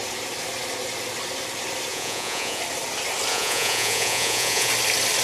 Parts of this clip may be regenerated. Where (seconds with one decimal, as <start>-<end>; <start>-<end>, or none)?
1.9-2.6; 3.3-4.7